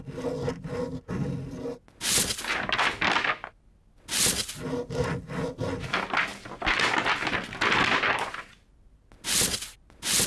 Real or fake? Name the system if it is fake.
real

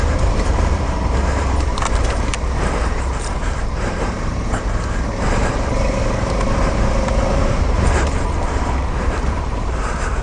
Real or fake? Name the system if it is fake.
fake, vocoder, BigVGAN v2